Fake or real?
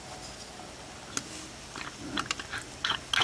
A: real